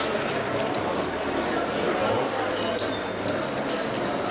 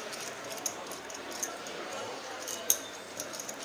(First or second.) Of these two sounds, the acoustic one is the first